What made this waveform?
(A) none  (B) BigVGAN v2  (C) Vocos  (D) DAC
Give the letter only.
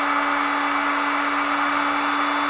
A